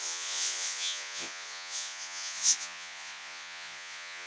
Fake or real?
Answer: fake